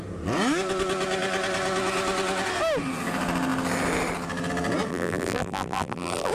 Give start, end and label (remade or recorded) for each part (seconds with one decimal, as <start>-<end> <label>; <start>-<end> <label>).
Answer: 0.0-4.9 recorded; 4.9-6.3 remade